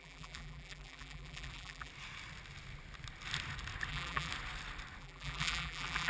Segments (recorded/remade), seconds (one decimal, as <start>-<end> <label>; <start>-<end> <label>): 0.0-1.9 remade; 1.9-3.9 recorded; 3.9-4.3 remade; 4.3-5.0 recorded; 5.0-6.1 remade